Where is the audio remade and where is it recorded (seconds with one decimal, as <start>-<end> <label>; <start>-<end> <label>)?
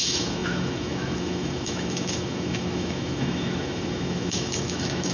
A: 0.0-5.1 remade